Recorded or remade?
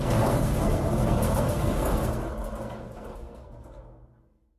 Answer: remade